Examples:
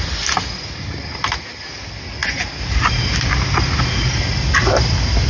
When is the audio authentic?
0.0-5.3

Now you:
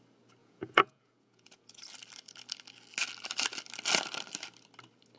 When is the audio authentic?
0.0-0.4; 1.8-5.2